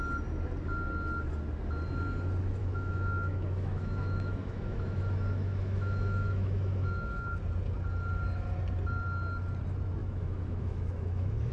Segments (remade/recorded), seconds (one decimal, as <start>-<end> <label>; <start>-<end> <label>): 0.0-2.6 recorded; 2.6-7.4 remade; 7.4-10.0 recorded; 10.0-11.5 remade